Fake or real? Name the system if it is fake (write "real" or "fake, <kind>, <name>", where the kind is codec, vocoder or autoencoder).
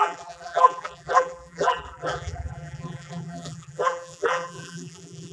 fake, vocoder, BigVGAN v2